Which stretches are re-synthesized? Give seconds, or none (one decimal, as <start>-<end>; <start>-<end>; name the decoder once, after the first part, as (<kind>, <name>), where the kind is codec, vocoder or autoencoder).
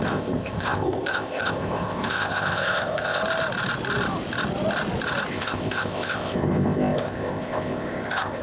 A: 0.0-3.2 (codec, ZipCodec); 5.3-8.4